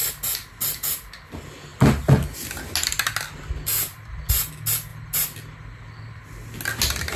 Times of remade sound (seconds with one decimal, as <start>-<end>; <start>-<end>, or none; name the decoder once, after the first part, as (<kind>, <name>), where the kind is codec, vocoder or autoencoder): none